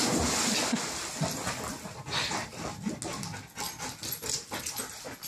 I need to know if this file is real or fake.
real